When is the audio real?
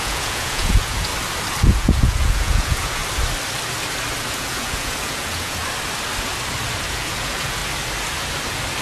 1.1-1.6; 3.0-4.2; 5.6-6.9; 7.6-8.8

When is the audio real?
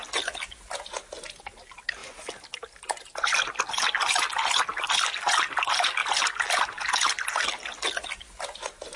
0.0-9.0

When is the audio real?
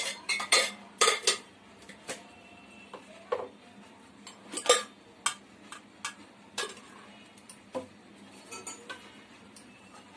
1.2-6.2; 8.1-9.3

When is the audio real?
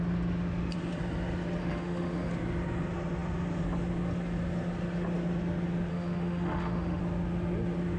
0.0-1.6; 2.3-5.9; 7.0-8.0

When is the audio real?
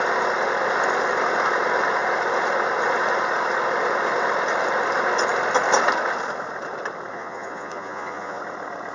0.0-7.1; 8.4-8.9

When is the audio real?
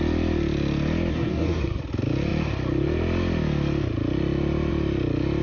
0.0-1.1; 1.8-5.4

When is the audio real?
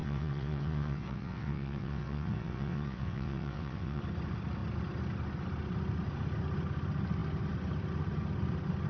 4.0-8.9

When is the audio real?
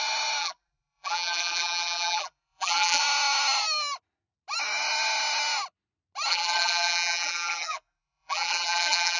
0.0-0.4; 3.0-6.3